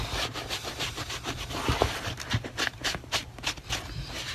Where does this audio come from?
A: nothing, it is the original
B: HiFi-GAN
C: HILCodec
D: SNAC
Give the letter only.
A